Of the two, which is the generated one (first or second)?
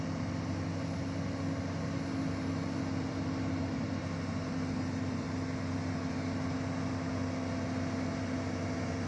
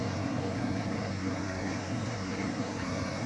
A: second